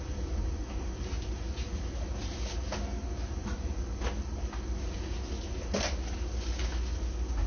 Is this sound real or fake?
real